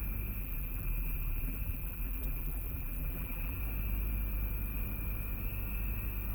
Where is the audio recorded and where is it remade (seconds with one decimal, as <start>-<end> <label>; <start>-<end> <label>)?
0.0-0.4 recorded; 0.4-3.6 remade; 3.6-6.3 recorded